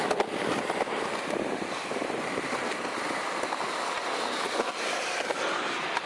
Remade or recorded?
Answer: recorded